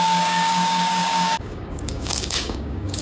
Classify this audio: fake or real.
fake